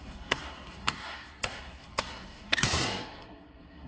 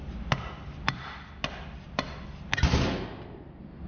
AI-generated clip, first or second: first